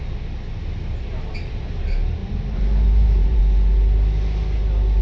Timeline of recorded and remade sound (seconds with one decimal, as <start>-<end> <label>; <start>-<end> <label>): 0.0-1.1 recorded; 1.1-1.8 remade; 1.8-2.2 recorded; 2.2-3.4 remade; 3.4-5.0 recorded